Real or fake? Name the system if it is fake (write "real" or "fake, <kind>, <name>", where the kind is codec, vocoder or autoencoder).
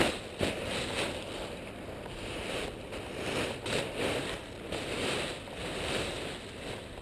real